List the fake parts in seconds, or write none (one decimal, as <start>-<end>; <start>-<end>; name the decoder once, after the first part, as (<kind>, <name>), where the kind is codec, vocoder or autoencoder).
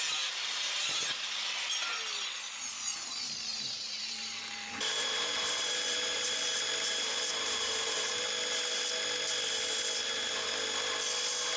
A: 3.5-8.2 (vocoder, BigVGAN v2); 10.0-10.5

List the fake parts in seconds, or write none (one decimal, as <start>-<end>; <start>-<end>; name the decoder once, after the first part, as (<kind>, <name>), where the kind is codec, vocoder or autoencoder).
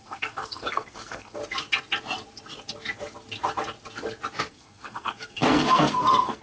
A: 0.0-1.4 (codec, SNAC); 4.4-6.4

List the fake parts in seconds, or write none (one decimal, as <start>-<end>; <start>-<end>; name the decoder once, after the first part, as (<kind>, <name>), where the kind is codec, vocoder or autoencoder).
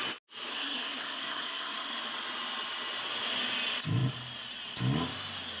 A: 0.5-2.0 (codec, SNAC)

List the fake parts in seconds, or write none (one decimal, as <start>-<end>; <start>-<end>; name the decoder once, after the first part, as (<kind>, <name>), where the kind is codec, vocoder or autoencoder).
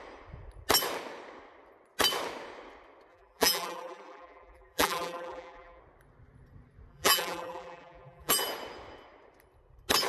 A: 3.1-5.8 (vocoder, BigVGAN v2); 6.9-8.3